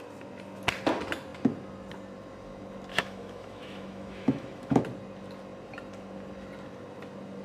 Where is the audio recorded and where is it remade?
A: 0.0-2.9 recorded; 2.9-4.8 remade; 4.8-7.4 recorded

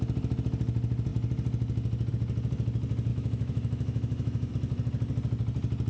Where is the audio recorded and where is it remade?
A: 0.0-3.1 recorded; 3.1-4.5 remade; 4.5-5.9 recorded

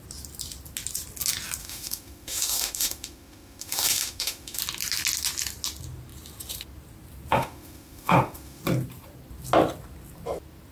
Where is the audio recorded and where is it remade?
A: 0.0-1.6 recorded; 1.6-4.6 remade; 4.6-7.3 recorded; 7.3-8.6 remade; 8.6-10.7 recorded

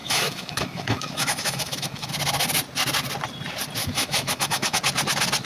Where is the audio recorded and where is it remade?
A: 0.0-2.1 remade; 2.1-3.8 recorded; 3.8-4.8 remade; 4.8-5.5 recorded

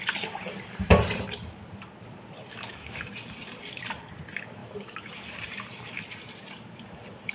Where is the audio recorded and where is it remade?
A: 0.0-2.5 recorded; 2.5-3.0 remade; 3.0-4.6 recorded; 4.6-5.1 remade; 5.1-7.3 recorded

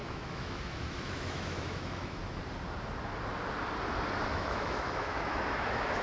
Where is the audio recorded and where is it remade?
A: 0.0-2.2 remade; 2.2-4.3 recorded; 4.3-6.0 remade

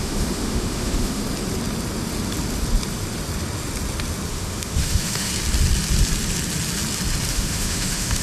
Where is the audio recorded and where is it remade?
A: 0.0-1.2 remade; 1.2-4.3 recorded; 4.3-5.3 remade; 5.3-7.3 recorded; 7.3-8.2 remade